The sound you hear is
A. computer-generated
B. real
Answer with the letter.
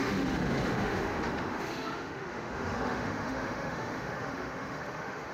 A